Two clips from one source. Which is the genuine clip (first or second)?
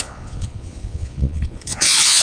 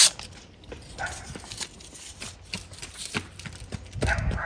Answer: second